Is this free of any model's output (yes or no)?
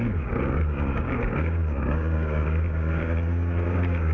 no